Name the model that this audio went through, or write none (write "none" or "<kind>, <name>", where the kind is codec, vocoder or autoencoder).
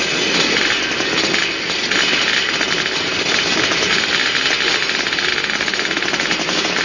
none